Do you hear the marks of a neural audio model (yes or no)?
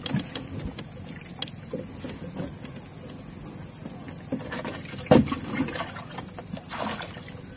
no